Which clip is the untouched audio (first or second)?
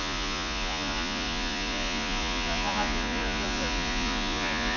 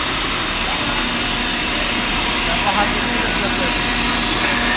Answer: second